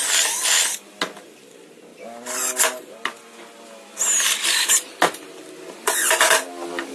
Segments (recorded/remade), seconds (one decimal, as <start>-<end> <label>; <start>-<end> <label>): 0.0-6.9 recorded